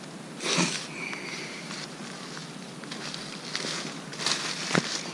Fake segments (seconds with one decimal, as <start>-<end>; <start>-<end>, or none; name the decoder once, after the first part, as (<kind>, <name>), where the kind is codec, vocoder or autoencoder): none